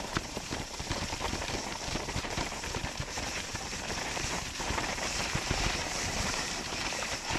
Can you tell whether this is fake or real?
fake